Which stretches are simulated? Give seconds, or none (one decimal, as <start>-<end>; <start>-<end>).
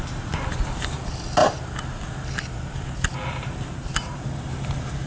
none